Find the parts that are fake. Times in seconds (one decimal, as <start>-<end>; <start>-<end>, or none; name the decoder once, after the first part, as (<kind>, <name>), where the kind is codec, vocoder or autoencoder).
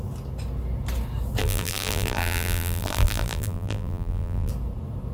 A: 1.4-4.5 (vocoder, BigVGAN v2)